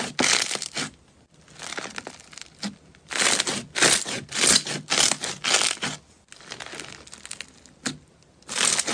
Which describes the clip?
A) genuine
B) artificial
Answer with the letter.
A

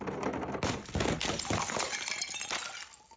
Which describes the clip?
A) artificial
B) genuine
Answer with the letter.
B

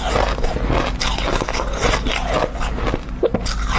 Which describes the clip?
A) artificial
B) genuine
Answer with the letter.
B